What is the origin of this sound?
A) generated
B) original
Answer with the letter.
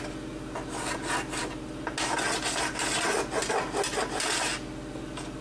B